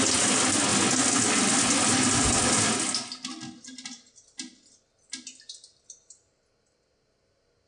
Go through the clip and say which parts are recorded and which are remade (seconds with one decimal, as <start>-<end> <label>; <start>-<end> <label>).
0.0-7.7 recorded